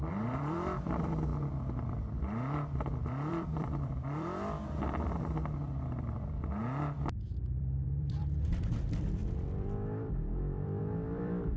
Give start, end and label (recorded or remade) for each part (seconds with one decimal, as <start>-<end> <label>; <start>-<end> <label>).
0.0-1.3 remade; 1.3-1.9 recorded; 1.9-6.6 remade; 6.6-7.1 recorded; 7.1-11.6 remade